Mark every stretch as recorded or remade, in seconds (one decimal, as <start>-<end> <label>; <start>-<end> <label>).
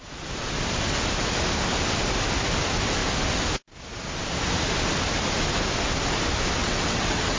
0.0-6.6 recorded; 6.6-7.4 remade